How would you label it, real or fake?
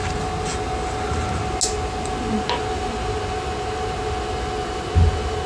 real